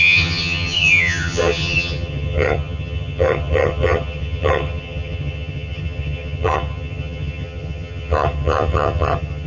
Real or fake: fake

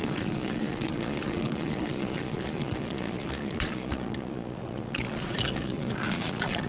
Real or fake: fake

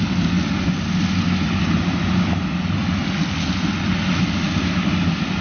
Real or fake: real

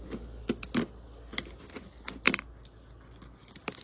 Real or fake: real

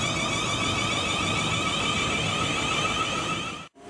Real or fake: real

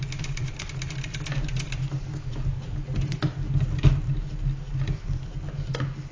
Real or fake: real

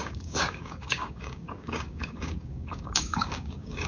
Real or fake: fake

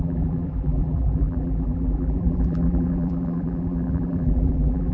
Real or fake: fake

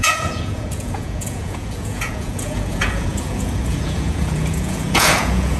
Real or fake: fake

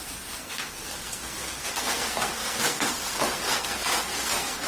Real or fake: fake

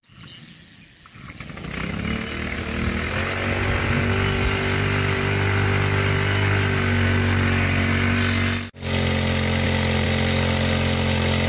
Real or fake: real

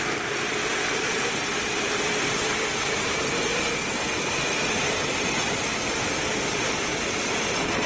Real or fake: real